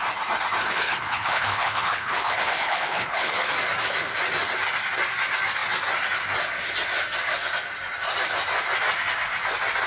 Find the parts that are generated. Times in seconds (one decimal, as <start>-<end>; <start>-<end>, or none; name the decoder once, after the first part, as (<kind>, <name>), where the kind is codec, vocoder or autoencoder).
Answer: 0.7-3.5 (codec, HILCodec)

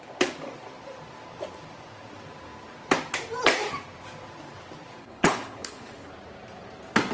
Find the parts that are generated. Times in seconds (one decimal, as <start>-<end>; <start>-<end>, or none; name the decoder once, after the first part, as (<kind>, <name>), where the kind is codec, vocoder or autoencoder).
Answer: 5.0-6.1 (codec, HILCodec)